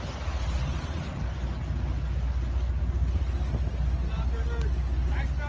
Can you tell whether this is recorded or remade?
recorded